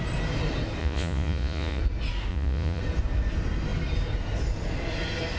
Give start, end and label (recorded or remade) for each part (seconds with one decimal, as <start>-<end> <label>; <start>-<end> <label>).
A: 0.0-0.8 recorded; 0.8-1.8 remade; 1.8-2.3 recorded; 2.3-2.8 remade; 2.8-5.4 recorded

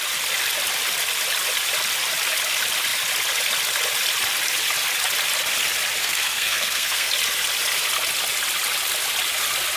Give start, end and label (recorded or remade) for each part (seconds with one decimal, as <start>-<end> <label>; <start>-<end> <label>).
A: 0.0-6.0 recorded; 6.0-7.1 remade; 7.1-9.8 recorded

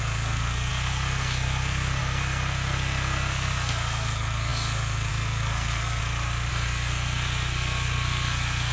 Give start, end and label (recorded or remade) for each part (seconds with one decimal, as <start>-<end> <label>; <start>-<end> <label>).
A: 0.0-6.0 remade; 6.0-6.5 recorded; 6.5-8.7 remade

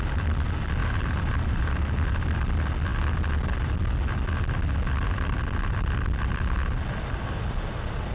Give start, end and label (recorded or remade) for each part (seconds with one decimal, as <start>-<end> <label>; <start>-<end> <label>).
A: 0.0-0.8 recorded; 0.8-2.2 remade; 2.2-8.1 recorded